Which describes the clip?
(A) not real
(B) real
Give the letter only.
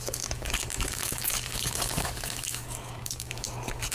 A